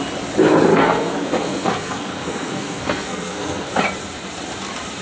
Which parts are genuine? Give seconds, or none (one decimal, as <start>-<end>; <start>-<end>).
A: 0.0-0.7; 3.7-5.0